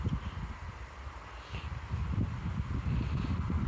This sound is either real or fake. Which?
real